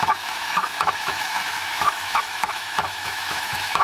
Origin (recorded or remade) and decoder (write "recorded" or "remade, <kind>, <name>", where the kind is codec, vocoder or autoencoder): remade, autoencoder, DAC-VAE